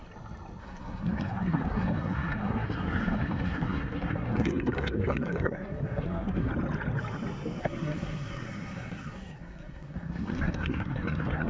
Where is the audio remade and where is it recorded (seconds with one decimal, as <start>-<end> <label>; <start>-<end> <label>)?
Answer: 0.0-0.6 recorded; 0.6-6.5 remade; 6.5-7.6 recorded; 7.6-11.5 remade